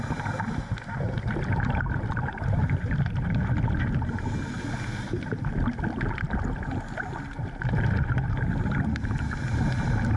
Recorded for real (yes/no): yes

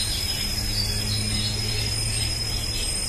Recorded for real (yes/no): yes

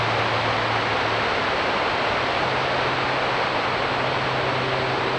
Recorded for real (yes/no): yes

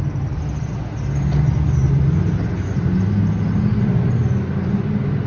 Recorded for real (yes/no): yes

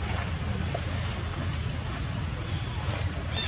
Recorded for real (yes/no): no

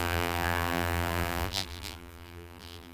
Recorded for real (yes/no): no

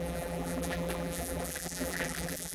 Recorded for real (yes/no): no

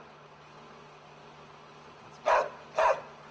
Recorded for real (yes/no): yes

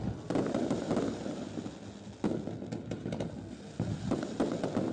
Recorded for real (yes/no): yes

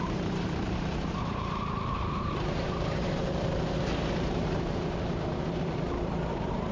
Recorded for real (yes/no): no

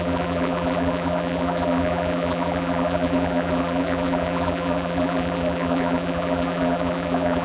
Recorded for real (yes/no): no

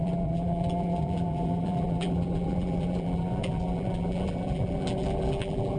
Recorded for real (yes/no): no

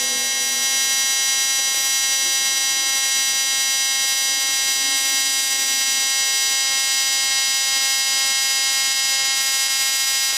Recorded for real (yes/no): yes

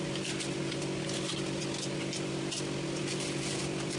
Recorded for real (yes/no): yes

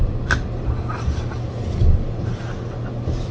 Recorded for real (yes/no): yes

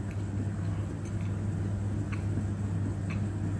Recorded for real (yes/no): yes